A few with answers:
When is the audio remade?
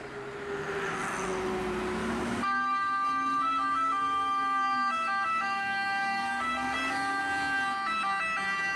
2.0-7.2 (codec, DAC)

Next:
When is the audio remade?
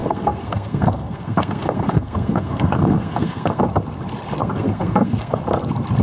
0.0-3.6 (codec, SNAC); 4.4-5.4